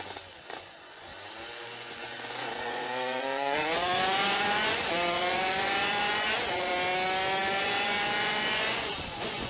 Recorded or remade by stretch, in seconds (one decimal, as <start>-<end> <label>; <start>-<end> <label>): 0.0-1.1 remade; 1.1-1.6 recorded; 1.6-6.7 remade; 6.7-7.6 recorded; 7.6-9.5 remade